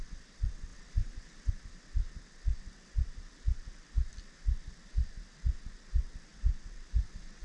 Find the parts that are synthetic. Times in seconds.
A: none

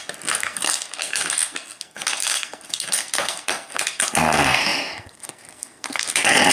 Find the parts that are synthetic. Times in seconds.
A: 0.0-6.5

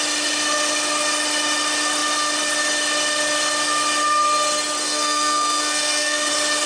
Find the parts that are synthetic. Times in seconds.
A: 4.8-6.3

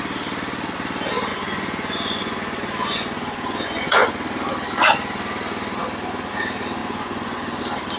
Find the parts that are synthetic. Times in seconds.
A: 1.3-4.1; 6.8-7.6

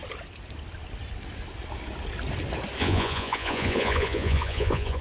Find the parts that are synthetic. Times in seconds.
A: 2.8-5.0

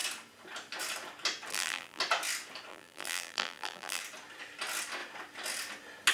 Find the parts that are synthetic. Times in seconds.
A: 1.5-2.0; 2.7-4.0